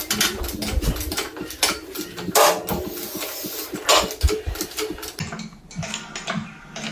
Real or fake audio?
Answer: real